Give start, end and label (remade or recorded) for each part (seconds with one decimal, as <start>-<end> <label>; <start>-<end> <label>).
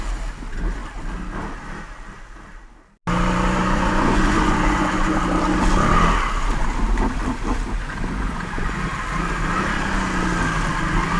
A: 0.0-3.6 recorded; 3.6-5.2 remade; 5.2-7.8 recorded; 7.8-8.8 remade; 8.8-11.2 recorded